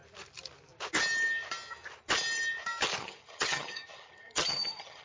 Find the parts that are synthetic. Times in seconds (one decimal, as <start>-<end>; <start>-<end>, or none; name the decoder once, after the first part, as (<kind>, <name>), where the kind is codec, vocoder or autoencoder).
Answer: 3.0-5.0 (vocoder, HiFi-GAN)